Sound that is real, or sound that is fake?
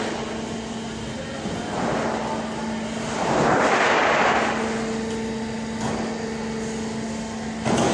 real